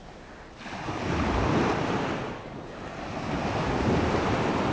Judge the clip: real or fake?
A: real